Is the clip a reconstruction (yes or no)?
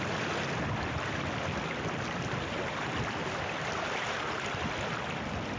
no